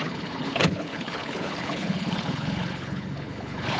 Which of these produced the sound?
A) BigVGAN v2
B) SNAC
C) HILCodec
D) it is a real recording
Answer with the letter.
C